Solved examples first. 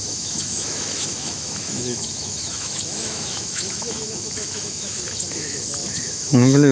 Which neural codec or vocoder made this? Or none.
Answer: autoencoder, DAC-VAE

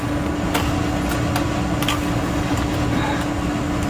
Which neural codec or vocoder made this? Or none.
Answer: none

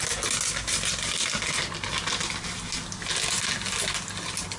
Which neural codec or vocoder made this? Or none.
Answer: none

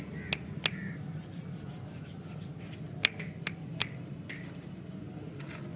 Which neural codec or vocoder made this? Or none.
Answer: none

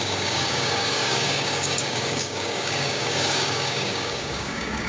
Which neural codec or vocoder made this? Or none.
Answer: codec, DAC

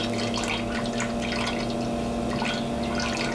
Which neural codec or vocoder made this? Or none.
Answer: none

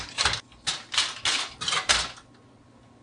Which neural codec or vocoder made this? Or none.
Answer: none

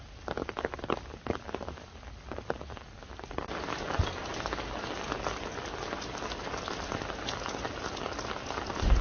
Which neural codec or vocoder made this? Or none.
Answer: none